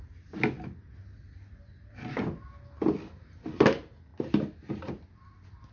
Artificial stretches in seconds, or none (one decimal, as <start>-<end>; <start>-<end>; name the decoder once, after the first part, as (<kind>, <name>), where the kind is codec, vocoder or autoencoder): none